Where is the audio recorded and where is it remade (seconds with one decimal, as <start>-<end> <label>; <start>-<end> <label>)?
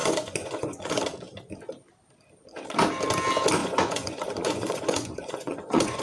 0.0-1.0 remade; 1.0-3.6 recorded; 3.6-6.0 remade